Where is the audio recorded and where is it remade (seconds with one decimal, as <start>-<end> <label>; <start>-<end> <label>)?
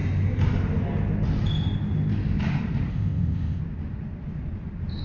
0.0-2.9 recorded; 2.9-3.6 remade; 3.6-5.0 recorded